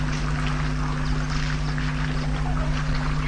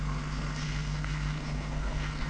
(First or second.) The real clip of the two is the first